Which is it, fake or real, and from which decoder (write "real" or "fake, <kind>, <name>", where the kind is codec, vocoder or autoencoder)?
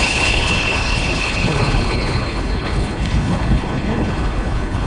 fake, codec, HILCodec